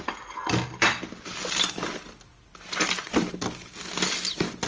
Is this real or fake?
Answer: real